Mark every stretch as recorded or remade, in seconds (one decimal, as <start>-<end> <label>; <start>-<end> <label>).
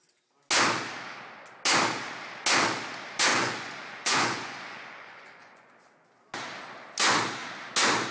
0.0-3.3 recorded; 3.3-5.7 remade; 5.7-8.1 recorded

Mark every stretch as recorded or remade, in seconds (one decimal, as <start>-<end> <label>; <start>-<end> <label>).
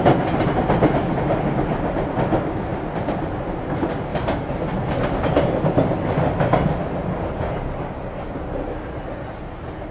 0.0-9.9 recorded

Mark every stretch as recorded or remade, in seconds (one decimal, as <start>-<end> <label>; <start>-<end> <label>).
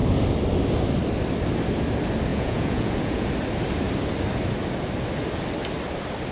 0.0-2.3 recorded; 2.3-3.3 remade; 3.3-6.3 recorded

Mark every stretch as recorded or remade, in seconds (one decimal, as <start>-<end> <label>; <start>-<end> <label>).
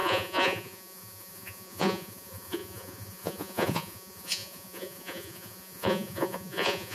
0.0-6.9 remade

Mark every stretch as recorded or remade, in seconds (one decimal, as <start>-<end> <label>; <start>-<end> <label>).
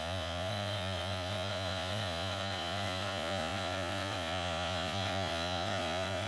0.0-6.3 remade